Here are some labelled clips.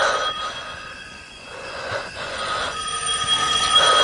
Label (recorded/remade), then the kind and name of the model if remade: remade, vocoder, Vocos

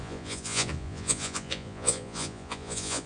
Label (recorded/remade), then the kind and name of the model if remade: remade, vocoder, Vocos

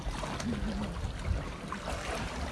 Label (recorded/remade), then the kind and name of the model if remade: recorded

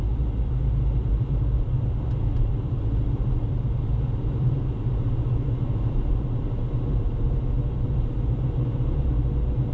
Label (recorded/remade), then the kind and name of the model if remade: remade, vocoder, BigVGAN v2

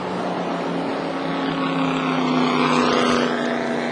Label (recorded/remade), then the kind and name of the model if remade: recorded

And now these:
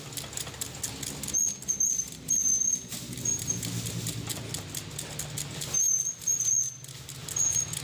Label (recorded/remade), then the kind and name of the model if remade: recorded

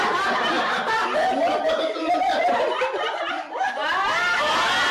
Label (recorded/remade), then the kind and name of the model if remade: recorded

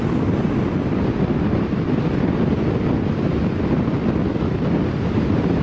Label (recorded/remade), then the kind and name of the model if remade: recorded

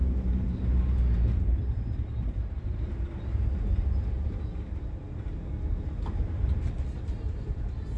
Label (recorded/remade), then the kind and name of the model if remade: remade, vocoder, BigVGAN v2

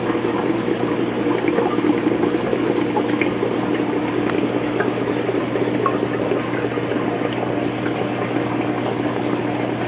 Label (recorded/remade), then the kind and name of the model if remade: recorded